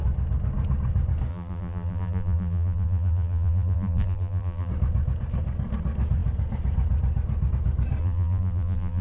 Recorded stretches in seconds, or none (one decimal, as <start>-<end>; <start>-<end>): 0.0-1.3; 4.7-8.0